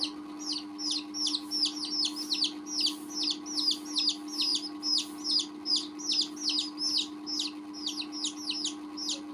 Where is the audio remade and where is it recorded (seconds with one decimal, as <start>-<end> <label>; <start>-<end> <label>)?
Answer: 0.0-9.3 recorded